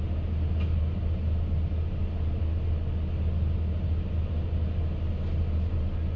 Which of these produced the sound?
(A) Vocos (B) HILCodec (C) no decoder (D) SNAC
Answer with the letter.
C